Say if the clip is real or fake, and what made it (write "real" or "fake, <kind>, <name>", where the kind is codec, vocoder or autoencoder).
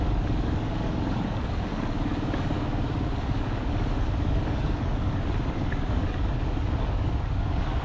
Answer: fake, codec, DAC